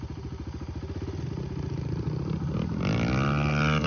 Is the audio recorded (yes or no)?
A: yes